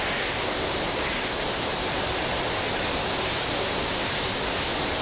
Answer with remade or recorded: recorded